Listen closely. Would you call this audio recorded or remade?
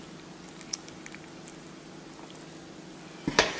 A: recorded